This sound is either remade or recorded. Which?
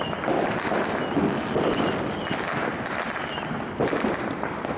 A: recorded